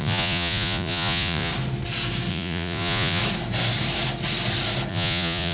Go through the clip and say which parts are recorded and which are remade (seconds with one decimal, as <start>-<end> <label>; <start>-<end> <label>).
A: 0.0-1.5 remade; 1.5-2.3 recorded; 2.3-3.2 remade; 3.2-4.9 recorded; 4.9-5.5 remade

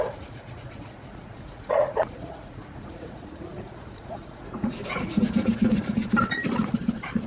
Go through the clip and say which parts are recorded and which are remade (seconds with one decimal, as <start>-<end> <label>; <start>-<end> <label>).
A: 0.0-6.0 remade; 6.0-7.3 recorded

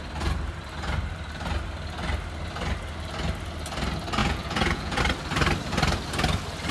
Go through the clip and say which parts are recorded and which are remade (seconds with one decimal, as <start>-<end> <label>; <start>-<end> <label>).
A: 0.0-4.2 recorded; 4.2-5.0 remade; 5.0-6.7 recorded